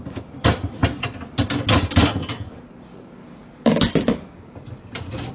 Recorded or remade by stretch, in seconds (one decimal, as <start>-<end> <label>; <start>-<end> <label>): 0.0-5.3 recorded